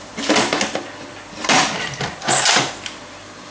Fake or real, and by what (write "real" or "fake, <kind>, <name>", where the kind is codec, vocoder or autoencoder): real